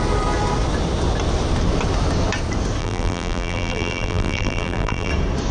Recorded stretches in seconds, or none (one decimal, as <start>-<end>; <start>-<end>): 0.0-2.8; 5.1-5.5